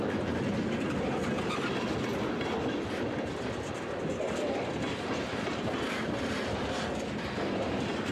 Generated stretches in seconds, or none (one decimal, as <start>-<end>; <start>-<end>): none